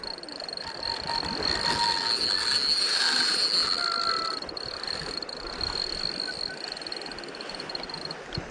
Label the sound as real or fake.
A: real